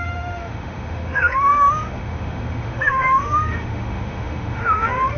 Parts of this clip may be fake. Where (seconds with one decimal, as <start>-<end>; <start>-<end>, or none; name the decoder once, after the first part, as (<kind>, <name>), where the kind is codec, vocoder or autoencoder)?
0.0-5.2 (autoencoder, DAC-VAE)